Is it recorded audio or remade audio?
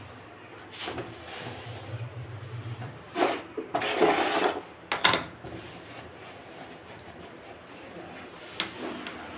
recorded